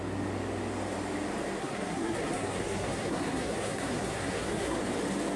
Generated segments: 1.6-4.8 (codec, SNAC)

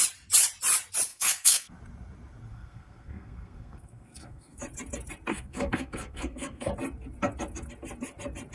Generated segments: 1.1-1.7 (codec, SNAC); 2.5-4.6; 5.3-6.7

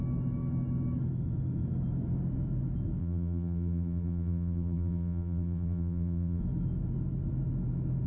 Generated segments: 3.0-6.4 (vocoder, BigVGAN v2)

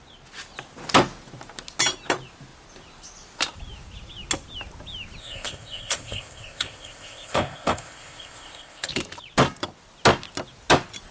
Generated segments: 5.2-8.9 (codec, ZipCodec)

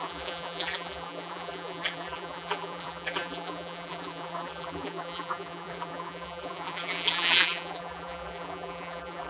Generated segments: 0.0-9.3 (vocoder, BigVGAN v2)

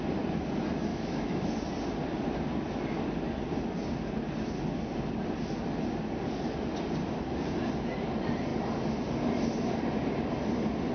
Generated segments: 0.9-1.5 (autoencoder, DAC-VAE)

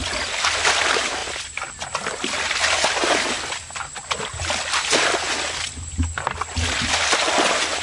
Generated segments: none